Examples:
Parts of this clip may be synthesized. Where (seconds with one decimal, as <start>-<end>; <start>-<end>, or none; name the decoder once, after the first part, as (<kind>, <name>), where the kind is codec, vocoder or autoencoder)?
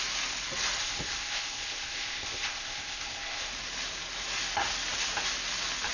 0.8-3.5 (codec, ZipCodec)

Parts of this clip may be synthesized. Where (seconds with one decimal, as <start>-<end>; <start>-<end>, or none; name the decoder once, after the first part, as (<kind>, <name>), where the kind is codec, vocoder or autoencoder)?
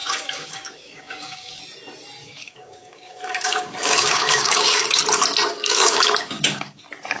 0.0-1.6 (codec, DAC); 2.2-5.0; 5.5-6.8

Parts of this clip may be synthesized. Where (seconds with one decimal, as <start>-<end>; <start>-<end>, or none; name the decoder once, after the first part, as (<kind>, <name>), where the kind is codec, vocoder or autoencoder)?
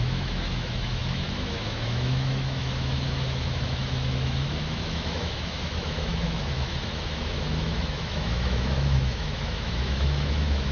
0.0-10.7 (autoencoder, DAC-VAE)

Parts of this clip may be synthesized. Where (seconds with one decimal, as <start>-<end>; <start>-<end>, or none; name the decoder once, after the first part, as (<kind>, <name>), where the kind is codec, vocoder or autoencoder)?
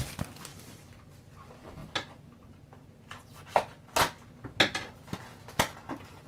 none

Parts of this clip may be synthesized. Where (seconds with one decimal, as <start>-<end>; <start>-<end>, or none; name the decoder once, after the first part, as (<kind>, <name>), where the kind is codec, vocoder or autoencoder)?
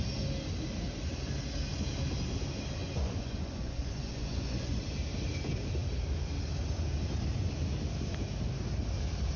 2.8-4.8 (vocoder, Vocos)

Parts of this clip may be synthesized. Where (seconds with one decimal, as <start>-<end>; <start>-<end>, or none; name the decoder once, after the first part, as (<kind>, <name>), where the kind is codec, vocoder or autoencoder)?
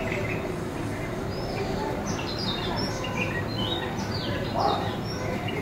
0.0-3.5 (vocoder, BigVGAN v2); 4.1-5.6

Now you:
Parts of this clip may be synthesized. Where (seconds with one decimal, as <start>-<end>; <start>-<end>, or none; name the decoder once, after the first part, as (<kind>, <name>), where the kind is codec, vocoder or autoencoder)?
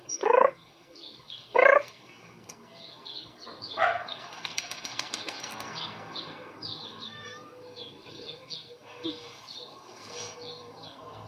0.0-11.3 (codec, SNAC)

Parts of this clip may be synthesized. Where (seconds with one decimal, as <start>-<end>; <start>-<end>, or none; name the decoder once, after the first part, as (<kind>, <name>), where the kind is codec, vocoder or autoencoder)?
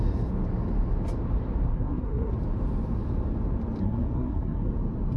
1.7-2.3 (codec, SNAC); 3.8-4.7